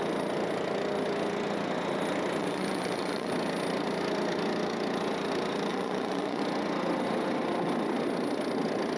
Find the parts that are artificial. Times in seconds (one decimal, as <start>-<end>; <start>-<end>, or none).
2.4-3.3; 5.7-6.4